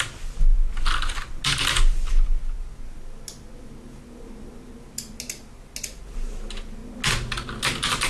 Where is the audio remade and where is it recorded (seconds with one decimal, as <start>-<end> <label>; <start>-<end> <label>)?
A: 0.0-8.1 recorded